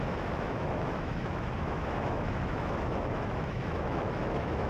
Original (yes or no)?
no